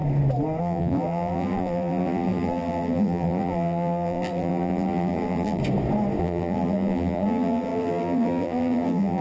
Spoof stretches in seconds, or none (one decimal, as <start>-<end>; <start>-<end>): 0.6-5.6; 6.2-9.2